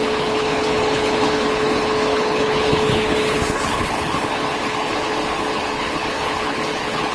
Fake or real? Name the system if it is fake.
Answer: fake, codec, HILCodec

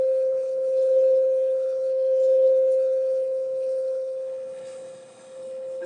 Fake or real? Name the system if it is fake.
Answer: fake, codec, HILCodec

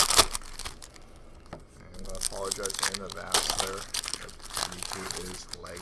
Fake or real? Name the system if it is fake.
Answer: real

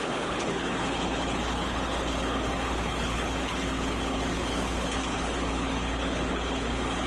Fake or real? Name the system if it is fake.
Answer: fake, codec, HILCodec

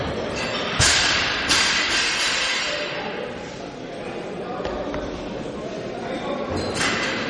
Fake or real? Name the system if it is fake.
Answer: real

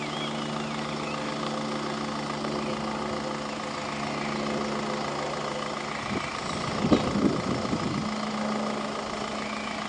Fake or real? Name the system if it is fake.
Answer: real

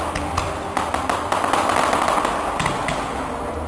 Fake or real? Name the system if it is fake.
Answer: real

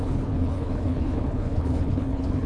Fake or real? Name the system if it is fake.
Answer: fake, codec, HILCodec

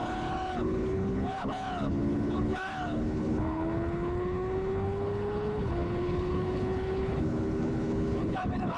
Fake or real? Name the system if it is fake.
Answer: fake, codec, HILCodec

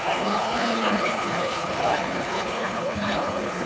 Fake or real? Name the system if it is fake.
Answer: fake, codec, HILCodec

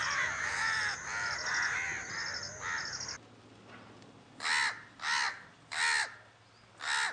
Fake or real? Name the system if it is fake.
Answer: real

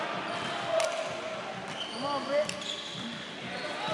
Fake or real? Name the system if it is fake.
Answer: real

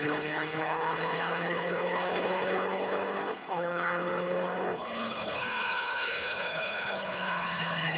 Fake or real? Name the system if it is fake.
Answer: fake, codec, HILCodec